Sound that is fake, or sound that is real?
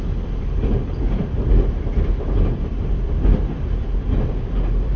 fake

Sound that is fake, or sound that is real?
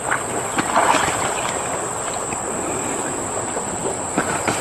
real